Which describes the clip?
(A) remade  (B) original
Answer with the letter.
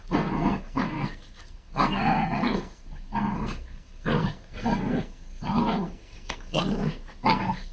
A